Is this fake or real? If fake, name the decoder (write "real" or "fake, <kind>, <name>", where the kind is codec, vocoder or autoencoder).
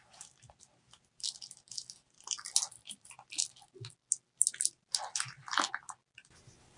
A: real